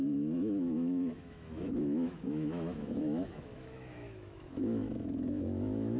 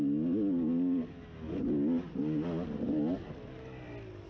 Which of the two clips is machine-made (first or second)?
first